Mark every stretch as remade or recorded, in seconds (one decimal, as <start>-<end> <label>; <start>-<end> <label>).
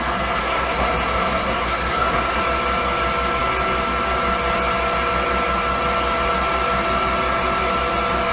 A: 0.0-0.4 recorded; 0.4-2.4 remade; 2.4-8.3 recorded